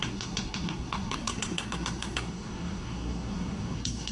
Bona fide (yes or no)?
no